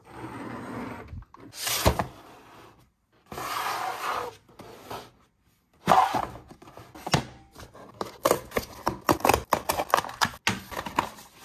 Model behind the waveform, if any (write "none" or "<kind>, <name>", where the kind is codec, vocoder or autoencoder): none